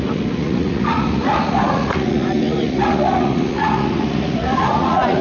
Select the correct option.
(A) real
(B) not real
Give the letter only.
B